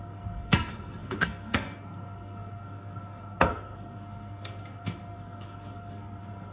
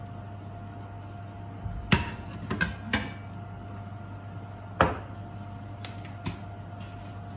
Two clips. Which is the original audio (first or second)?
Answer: second